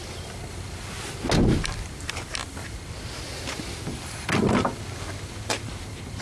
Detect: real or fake real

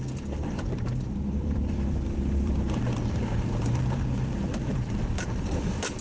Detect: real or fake fake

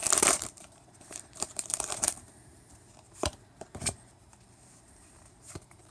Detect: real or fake fake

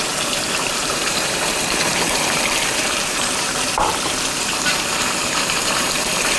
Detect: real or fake fake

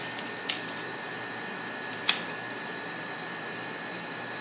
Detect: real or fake fake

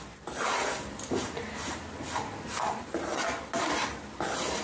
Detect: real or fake real